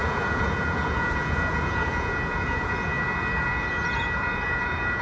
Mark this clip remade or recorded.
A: remade